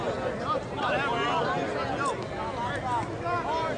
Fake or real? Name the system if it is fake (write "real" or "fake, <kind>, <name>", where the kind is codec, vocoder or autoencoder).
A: real